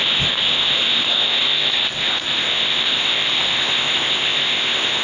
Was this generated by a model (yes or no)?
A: yes